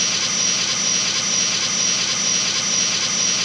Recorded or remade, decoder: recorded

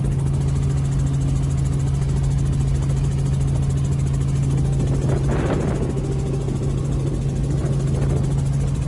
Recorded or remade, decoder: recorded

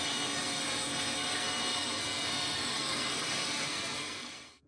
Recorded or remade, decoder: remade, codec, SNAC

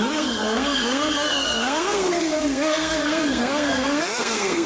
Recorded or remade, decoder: remade, codec, SNAC